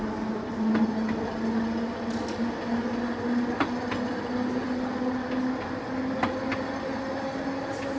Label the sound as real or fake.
real